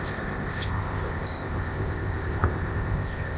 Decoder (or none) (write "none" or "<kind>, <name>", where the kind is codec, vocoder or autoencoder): codec, ZipCodec